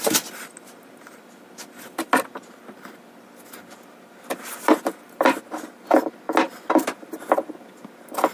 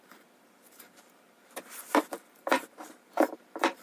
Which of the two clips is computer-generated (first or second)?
second